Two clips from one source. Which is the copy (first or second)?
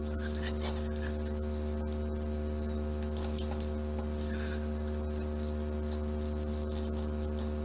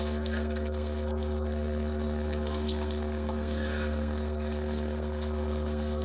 second